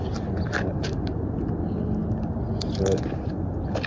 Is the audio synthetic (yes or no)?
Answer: no